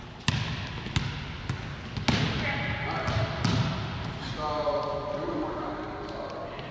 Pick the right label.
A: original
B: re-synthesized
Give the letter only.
A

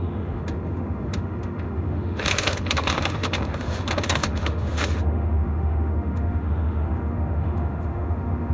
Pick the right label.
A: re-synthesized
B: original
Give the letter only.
A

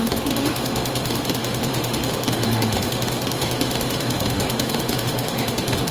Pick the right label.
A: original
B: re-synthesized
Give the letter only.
B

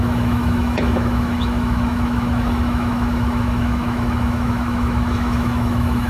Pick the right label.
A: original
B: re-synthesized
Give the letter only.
B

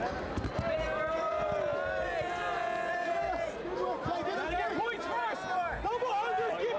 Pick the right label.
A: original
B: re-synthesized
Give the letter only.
A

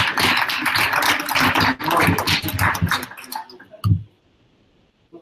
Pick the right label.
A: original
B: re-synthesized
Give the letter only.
A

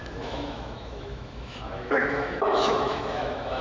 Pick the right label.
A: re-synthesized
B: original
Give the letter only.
A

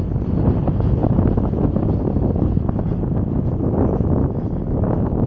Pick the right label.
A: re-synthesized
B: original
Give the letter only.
B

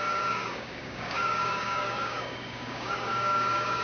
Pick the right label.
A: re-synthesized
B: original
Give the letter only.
A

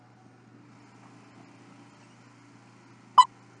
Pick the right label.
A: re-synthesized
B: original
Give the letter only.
B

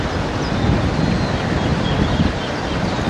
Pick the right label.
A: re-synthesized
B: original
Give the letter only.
B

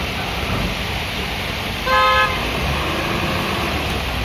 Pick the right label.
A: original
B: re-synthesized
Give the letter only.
A